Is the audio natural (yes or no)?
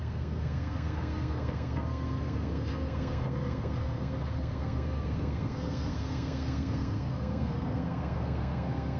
no